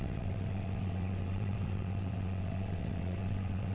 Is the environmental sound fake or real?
fake